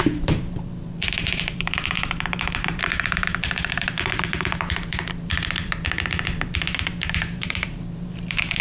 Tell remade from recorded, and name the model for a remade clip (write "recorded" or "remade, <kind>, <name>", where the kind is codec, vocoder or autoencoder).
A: remade, vocoder, BigVGAN v2